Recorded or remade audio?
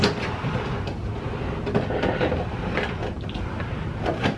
recorded